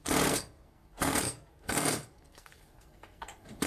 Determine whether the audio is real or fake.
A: fake